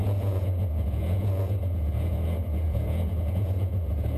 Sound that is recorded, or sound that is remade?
remade